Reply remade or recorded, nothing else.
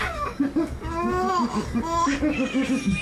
remade